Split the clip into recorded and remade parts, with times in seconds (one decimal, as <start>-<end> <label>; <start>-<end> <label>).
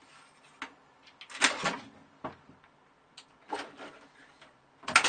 0.0-5.1 recorded